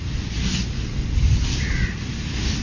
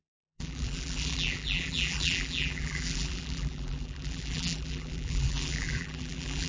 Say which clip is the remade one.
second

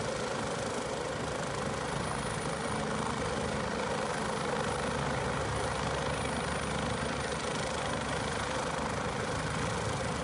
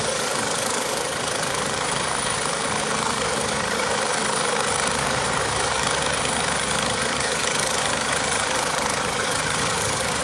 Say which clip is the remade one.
second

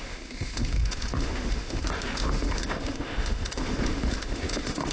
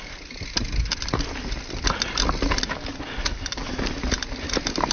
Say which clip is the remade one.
first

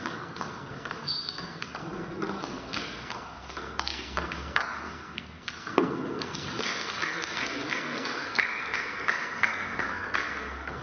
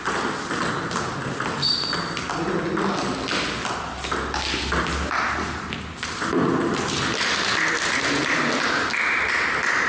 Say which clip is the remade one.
first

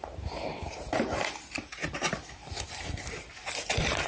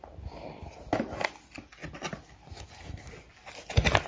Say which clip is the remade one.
first